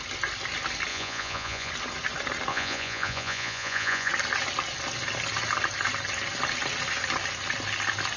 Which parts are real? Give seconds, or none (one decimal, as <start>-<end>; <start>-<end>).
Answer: 0.0-0.9; 1.7-2.5; 4.1-8.2